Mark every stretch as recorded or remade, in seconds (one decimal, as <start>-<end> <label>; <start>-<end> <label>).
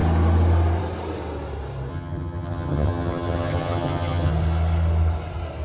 0.0-1.9 recorded; 1.9-4.3 remade; 4.3-5.6 recorded